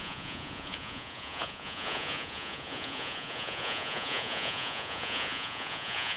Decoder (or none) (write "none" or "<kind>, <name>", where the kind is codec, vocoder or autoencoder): vocoder, Vocos